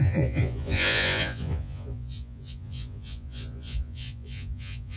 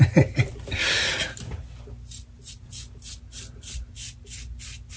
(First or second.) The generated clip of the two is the first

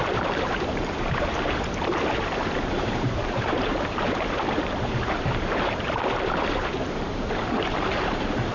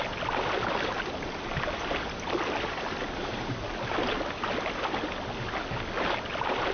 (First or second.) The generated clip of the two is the first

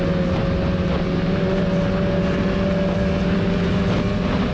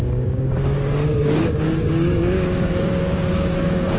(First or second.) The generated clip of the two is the second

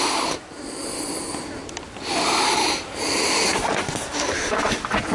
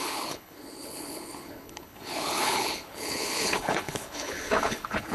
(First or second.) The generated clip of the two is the second